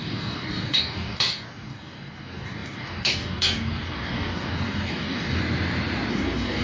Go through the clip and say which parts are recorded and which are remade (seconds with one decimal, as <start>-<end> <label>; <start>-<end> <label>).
0.0-5.4 remade; 5.4-6.1 recorded; 6.1-6.6 remade